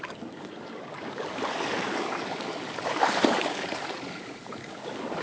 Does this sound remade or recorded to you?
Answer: remade